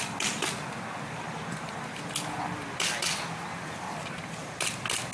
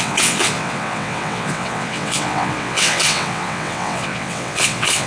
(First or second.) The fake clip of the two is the second